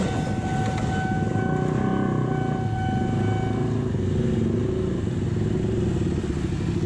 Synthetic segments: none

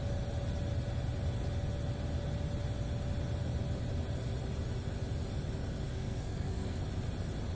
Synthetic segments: 5.9-6.8 (codec, SNAC)